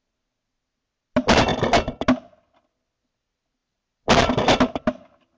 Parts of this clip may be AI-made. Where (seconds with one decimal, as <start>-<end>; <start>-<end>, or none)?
none